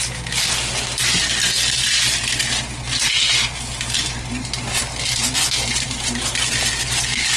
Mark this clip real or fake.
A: real